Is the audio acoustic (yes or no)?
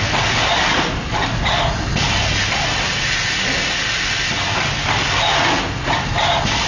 yes